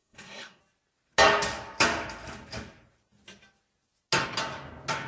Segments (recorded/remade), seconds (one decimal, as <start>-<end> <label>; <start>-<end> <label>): 0.0-0.6 remade; 0.6-5.1 recorded